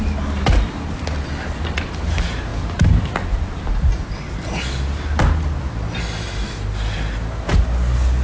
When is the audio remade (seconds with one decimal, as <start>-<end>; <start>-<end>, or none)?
none